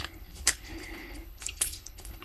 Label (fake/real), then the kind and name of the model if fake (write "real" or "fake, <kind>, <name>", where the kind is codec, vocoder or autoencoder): fake, codec, HILCodec